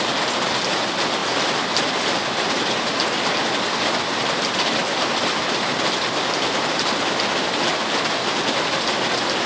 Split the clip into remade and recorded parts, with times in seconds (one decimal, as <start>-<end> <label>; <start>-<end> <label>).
0.0-9.5 recorded